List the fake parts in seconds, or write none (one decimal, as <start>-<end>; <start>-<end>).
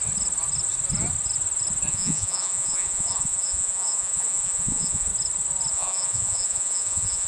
1.9-5.1; 5.7-7.3